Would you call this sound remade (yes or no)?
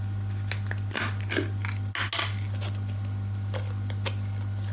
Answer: no